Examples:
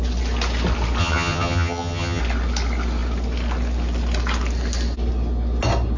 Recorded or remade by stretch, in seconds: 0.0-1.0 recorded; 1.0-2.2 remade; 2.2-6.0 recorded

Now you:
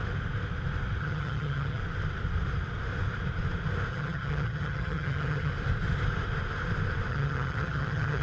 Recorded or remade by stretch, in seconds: 0.0-1.0 recorded; 1.0-1.8 remade; 1.8-3.9 recorded; 3.9-5.5 remade; 5.5-7.1 recorded; 7.1-8.2 remade

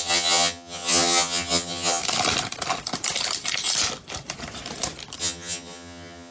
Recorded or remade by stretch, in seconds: 0.0-2.0 remade; 2.0-5.2 recorded; 5.2-6.3 remade

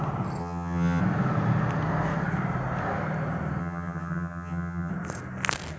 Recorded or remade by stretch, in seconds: 0.0-0.4 recorded; 0.4-1.0 remade; 1.0-3.6 recorded; 3.6-4.9 remade; 4.9-5.8 recorded